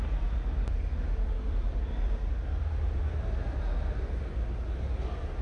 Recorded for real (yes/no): yes